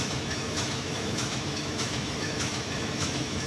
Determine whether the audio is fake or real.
fake